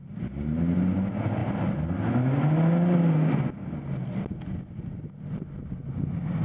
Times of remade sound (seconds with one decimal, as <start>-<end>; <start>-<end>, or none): none